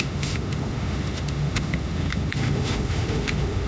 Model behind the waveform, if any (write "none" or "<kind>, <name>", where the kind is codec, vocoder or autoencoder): autoencoder, DAC-VAE